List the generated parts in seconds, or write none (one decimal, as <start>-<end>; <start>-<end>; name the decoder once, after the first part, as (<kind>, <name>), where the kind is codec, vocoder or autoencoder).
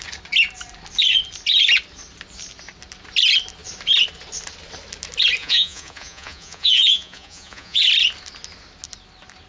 5.4-7.8 (vocoder, Vocos)